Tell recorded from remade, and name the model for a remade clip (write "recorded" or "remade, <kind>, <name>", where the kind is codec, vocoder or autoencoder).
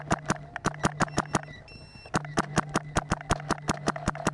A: recorded